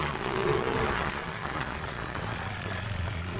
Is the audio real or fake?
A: fake